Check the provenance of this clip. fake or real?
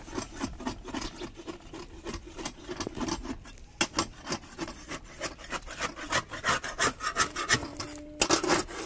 real